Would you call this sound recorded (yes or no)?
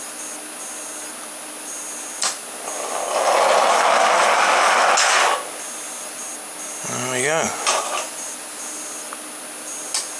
yes